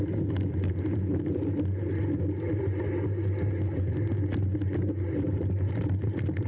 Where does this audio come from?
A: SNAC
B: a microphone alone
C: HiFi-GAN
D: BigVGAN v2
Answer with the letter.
B